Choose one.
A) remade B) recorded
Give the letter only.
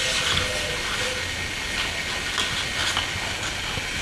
B